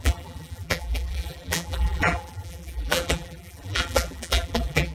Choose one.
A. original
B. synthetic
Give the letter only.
B